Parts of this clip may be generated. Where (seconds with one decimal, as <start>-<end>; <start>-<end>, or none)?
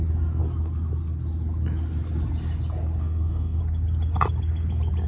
3.0-3.6